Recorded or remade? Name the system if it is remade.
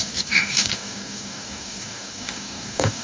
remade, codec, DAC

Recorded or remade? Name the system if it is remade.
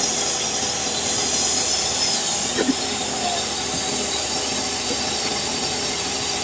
remade, vocoder, BigVGAN v2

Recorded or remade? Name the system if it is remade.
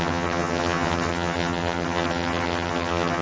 remade, vocoder, HiFi-GAN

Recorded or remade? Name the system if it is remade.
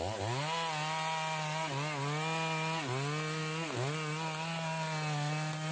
recorded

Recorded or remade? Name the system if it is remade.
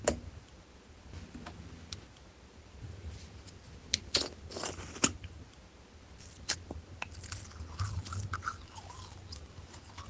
recorded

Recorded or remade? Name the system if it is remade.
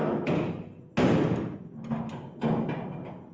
recorded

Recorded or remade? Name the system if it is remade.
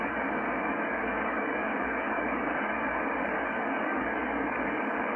remade, codec, DAC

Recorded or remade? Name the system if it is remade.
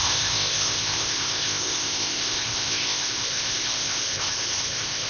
remade, codec, ZipCodec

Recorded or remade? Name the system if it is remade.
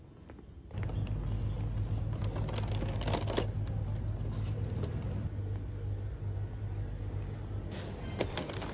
recorded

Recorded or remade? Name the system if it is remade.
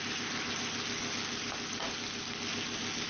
recorded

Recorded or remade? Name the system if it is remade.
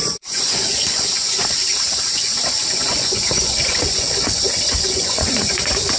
remade, vocoder, Vocos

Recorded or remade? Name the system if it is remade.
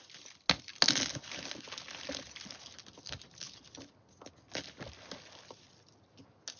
recorded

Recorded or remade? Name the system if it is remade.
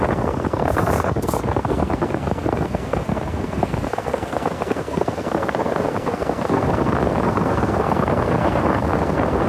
remade, codec, SNAC